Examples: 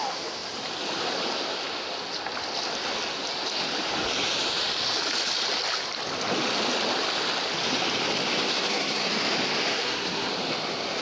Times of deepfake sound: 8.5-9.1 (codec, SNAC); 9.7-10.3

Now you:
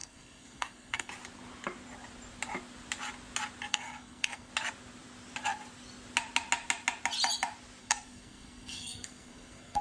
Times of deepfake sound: 0.0-1.1 (codec, SNAC); 3.7-4.5; 7.8-9.8

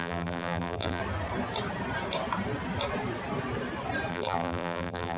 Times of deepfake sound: 0.0-1.0 (vocoder, BigVGAN v2); 4.1-5.2

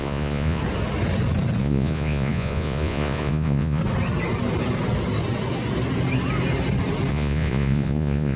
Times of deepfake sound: 0.0-0.6 (vocoder, Vocos); 1.6-3.8; 7.1-8.4

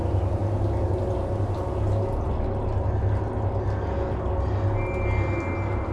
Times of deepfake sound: none

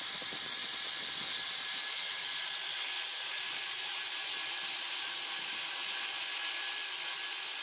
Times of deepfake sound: 0.6-2.2 (vocoder, BigVGAN v2); 3.1-4.2

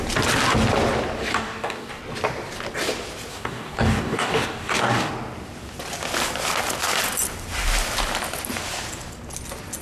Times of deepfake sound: 1.3-2.0 (codec, DAC); 3.3-5.1

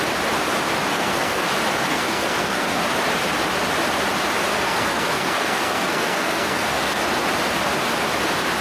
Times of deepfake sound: 0.9-1.5 (codec, SNAC); 1.9-2.8; 4.5-7.0